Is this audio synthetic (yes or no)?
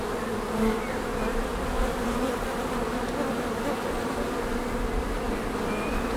no